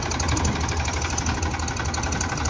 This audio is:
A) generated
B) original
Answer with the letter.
B